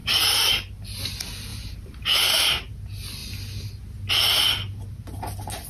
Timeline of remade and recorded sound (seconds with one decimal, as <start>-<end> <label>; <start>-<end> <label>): 0.0-0.5 remade; 0.5-1.5 recorded; 1.5-2.5 remade; 2.5-5.7 recorded